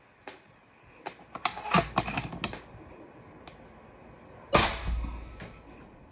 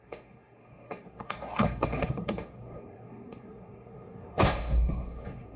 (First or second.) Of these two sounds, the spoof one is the second